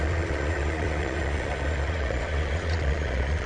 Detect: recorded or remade remade